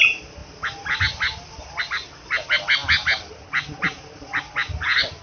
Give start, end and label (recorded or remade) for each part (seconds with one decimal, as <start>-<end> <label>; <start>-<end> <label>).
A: 0.0-5.2 recorded